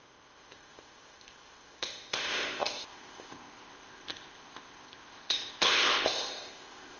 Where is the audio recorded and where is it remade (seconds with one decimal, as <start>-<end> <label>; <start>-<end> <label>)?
0.0-7.0 remade